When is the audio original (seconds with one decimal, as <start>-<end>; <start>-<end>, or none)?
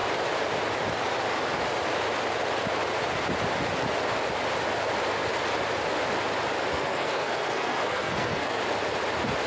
0.0-6.7; 8.6-9.5